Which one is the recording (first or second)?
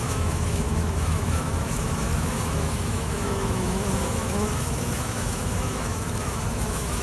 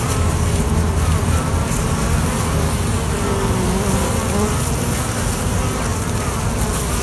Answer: second